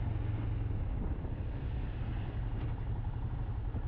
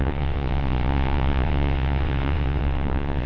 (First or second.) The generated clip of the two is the second